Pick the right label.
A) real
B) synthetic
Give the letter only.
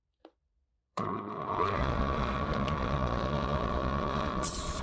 B